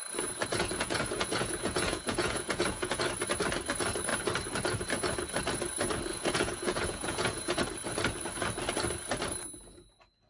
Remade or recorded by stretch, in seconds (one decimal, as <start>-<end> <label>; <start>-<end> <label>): 0.0-0.5 recorded; 0.5-3.0 remade; 3.0-6.1 recorded; 6.1-7.6 remade; 7.6-10.3 recorded